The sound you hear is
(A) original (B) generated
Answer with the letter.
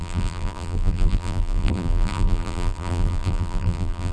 B